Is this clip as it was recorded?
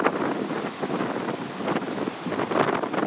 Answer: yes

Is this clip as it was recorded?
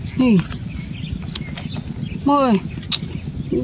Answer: yes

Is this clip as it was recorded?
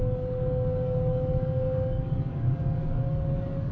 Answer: no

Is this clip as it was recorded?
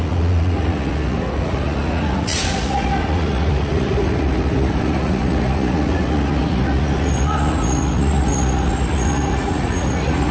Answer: no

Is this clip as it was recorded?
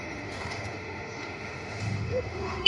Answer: no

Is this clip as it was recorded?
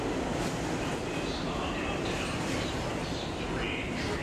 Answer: yes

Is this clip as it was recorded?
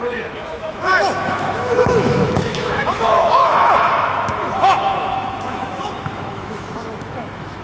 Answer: no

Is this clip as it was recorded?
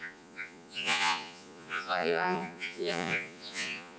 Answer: no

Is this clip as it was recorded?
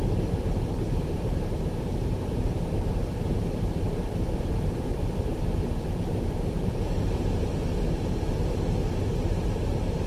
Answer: no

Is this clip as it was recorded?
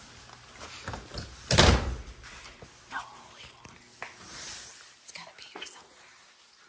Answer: yes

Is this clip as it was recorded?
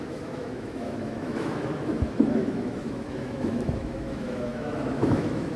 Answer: no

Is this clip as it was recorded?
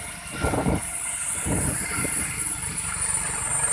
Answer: yes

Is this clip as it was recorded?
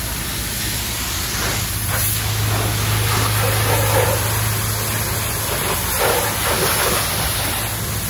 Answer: yes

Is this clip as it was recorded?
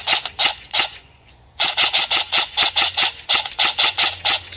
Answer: no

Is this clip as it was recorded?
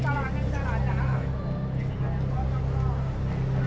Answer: yes